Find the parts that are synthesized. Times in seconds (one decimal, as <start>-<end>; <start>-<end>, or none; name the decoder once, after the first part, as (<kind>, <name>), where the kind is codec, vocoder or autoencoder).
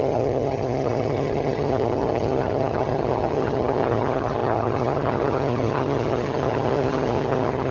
0.0-7.7 (vocoder, HiFi-GAN)